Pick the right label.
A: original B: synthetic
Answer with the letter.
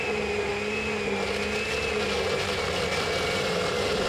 A